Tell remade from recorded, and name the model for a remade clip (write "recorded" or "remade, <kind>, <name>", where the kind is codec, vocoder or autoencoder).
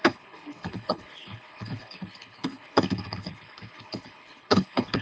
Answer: remade, codec, HILCodec